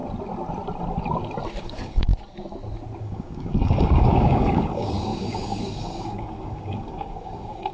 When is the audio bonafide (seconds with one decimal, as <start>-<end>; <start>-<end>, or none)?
0.0-1.6; 2.1-3.0